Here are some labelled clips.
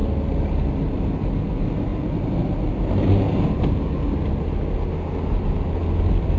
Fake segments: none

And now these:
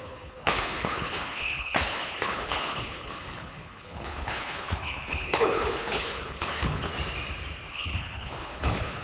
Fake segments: 0.0-6.9 (codec, HILCodec); 7.7-9.0

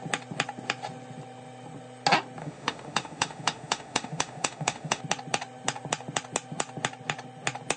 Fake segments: 2.4-5.0 (autoencoder, DAC-VAE)

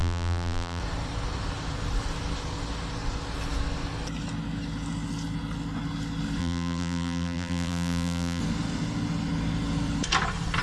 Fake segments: 0.0-0.8 (vocoder, BigVGAN v2); 6.4-8.4